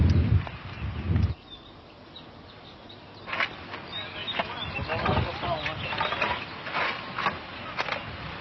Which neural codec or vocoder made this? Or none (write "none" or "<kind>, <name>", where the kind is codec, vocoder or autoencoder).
none